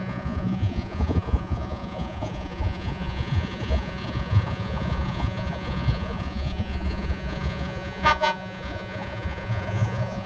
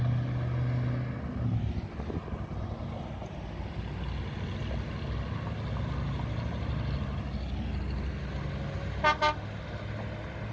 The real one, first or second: second